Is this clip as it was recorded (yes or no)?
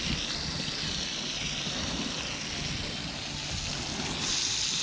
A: yes